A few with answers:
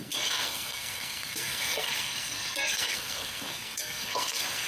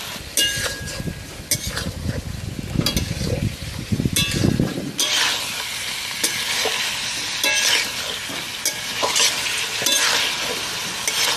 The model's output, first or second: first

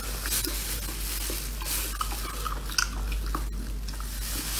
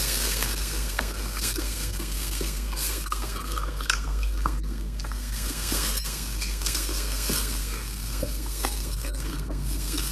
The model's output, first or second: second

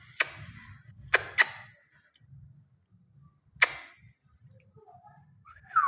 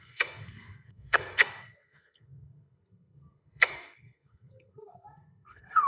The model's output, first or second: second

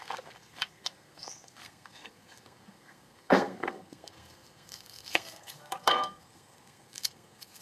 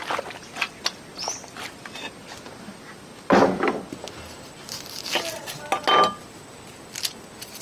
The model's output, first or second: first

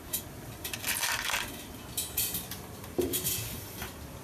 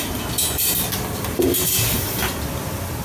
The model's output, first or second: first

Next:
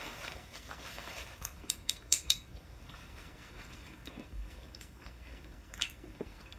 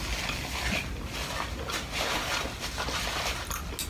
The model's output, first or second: first